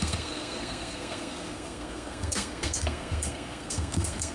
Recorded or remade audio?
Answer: remade